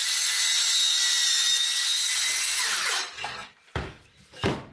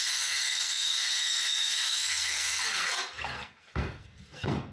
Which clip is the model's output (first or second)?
second